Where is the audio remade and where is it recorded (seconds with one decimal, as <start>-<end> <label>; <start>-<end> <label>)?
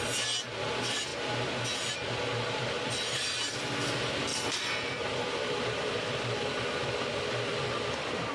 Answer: 0.0-2.3 recorded; 2.3-3.7 remade; 3.7-4.3 recorded; 4.3-6.5 remade; 6.5-8.3 recorded